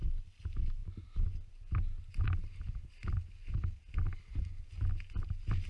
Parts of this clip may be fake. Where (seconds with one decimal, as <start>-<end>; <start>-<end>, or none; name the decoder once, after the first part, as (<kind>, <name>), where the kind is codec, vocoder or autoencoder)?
none